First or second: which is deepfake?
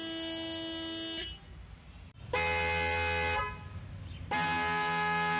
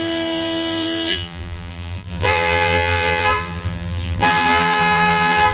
second